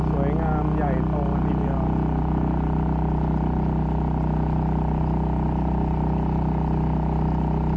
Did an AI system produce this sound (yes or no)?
no